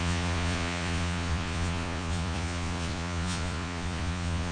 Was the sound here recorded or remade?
remade